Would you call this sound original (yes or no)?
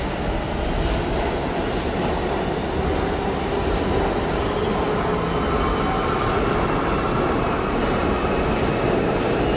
yes